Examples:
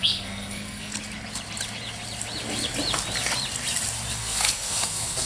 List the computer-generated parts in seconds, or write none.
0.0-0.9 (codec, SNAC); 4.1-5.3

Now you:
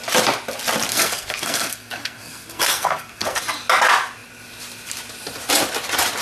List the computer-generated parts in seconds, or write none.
0.9-3.4 (codec, SNAC)

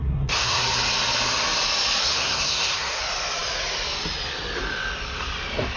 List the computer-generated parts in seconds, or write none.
0.0-0.6 (codec, SNAC); 2.0-3.0